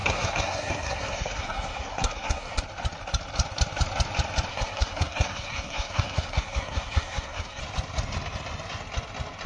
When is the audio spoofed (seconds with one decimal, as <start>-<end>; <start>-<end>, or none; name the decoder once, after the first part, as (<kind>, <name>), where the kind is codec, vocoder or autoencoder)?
0.0-2.6 (codec, SNAC); 4.5-7.6